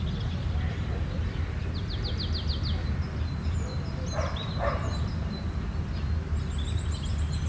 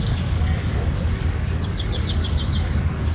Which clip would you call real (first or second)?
first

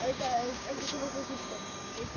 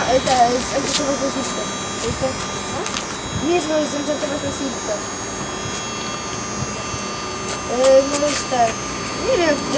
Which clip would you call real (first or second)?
second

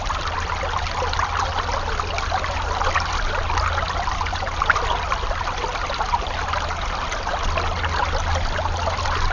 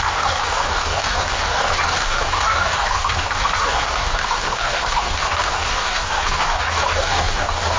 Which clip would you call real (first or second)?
first